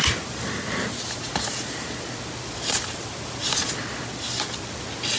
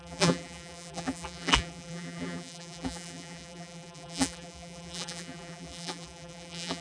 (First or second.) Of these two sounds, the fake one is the second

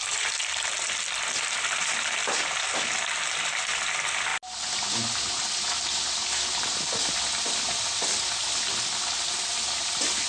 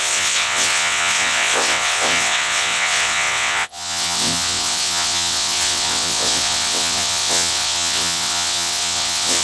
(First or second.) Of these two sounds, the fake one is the second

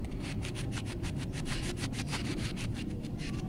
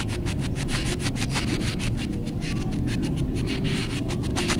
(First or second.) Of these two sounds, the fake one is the first